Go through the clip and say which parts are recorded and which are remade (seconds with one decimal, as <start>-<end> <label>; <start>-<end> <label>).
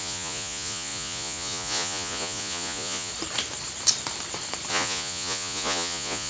0.0-3.1 remade; 3.1-4.7 recorded; 4.7-6.3 remade